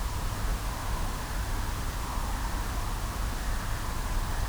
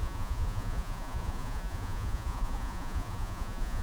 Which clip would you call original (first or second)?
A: first